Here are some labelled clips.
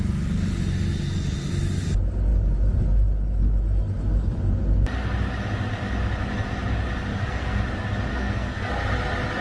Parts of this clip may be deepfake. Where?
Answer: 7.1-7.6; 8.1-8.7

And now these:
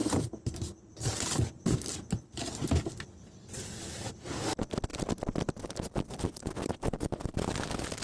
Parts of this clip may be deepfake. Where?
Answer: none

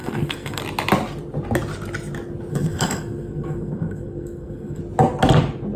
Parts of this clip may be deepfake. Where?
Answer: 0.0-0.6; 2.5-4.8

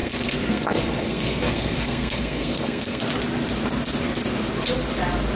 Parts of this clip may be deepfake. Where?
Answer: 0.0-3.0

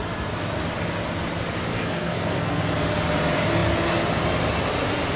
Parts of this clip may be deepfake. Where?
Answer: 1.7-2.6

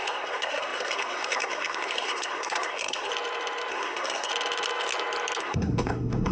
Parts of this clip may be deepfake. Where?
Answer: 0.0-3.1; 3.7-4.3; 5.4-6.3

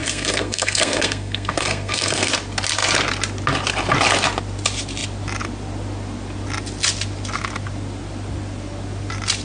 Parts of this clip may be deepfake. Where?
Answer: 0.0-2.3

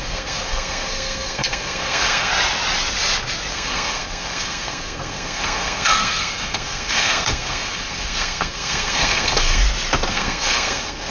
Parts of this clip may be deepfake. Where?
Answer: 0.0-2.3; 3.5-9.6; 10.1-11.1